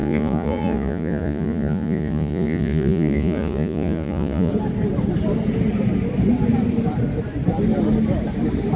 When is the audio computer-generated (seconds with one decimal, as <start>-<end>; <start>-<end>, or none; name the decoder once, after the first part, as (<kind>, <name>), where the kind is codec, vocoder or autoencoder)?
0.0-4.5 (vocoder, Vocos)